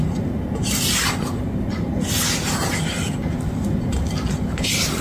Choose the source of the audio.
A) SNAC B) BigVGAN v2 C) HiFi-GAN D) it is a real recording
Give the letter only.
D